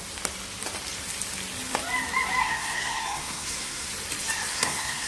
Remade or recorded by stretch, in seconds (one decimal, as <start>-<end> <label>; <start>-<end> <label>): 0.0-2.4 recorded; 2.4-3.9 remade; 3.9-4.5 recorded; 4.5-5.1 remade